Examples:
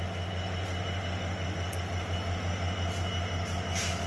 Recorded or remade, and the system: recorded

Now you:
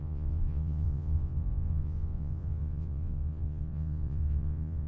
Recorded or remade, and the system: remade, vocoder, Vocos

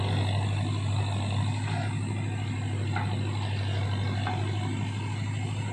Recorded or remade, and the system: recorded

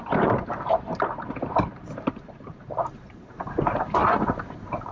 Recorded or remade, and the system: remade, vocoder, BigVGAN v2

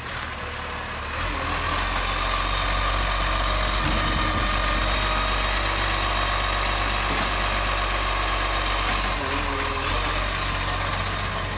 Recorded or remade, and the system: recorded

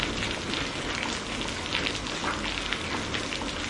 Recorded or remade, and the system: recorded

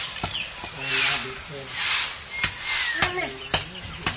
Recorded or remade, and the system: recorded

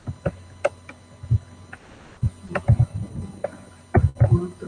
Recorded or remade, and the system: recorded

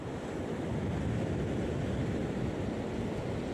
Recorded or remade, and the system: recorded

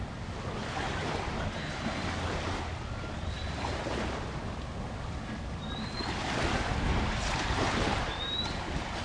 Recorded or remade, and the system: recorded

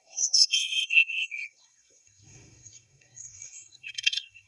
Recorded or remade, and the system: remade, codec, SNAC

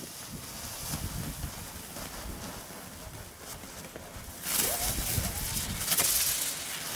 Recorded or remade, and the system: recorded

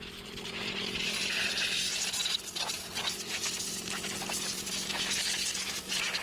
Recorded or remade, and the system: recorded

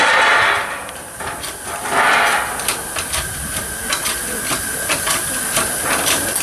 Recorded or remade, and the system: recorded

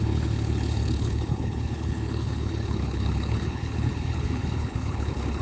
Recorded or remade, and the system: remade, codec, HILCodec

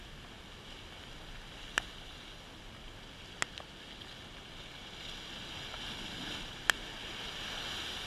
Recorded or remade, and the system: recorded